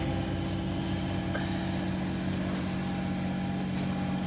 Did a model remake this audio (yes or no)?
no